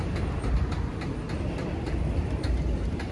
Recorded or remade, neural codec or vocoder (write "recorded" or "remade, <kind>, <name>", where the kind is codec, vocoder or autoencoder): recorded